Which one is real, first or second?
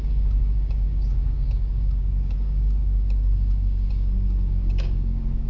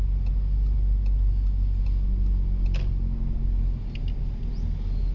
second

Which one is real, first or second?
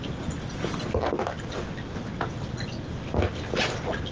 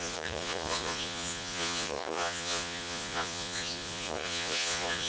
first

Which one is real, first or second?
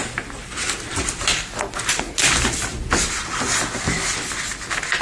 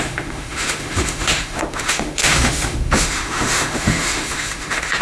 first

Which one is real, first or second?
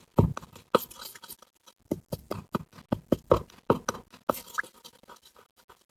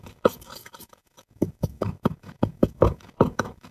first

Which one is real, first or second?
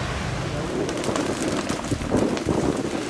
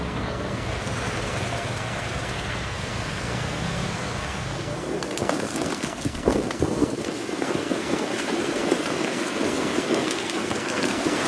first